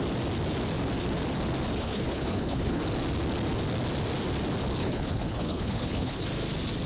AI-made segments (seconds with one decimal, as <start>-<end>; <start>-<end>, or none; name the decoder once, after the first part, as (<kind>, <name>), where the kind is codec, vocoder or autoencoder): 1.8-2.8 (codec, HILCodec); 4.8-6.2